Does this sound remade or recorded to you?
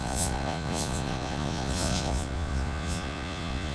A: remade